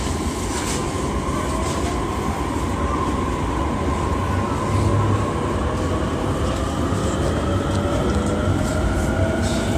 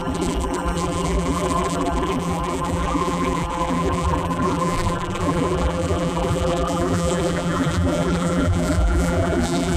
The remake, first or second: second